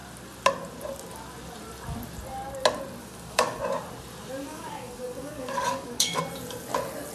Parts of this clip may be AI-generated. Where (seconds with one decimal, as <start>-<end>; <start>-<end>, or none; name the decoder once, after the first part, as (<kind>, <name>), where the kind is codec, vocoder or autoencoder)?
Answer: 3.0-3.6 (codec, DAC); 4.5-6.2